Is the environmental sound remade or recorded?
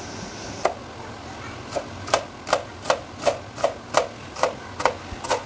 recorded